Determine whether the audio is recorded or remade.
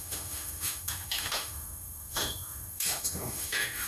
remade